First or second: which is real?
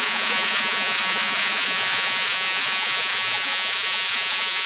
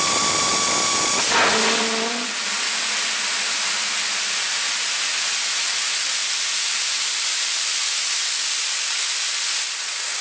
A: second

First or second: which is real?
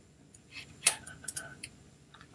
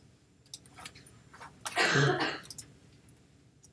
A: second